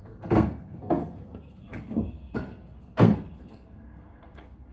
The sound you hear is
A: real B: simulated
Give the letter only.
B